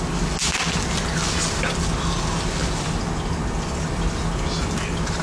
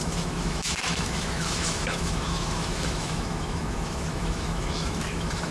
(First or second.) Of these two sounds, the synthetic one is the second